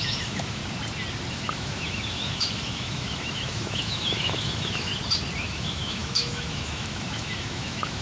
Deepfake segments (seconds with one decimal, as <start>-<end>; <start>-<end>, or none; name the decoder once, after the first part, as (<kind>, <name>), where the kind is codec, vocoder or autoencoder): 0.0-0.6 (autoencoder, DAC-VAE); 1.3-4.9; 5.4-8.0